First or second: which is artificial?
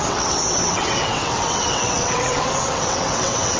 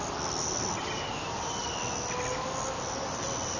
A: first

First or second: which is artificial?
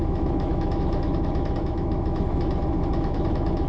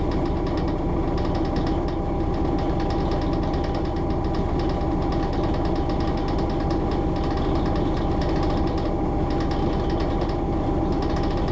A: first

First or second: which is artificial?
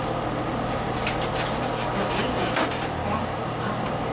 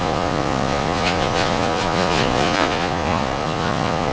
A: second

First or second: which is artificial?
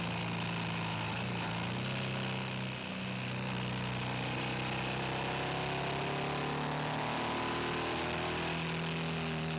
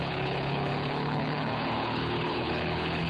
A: second